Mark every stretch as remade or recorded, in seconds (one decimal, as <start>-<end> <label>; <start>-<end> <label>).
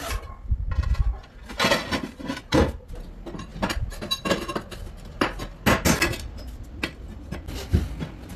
0.0-8.4 recorded